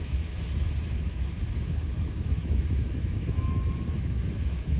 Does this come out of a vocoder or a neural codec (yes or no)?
yes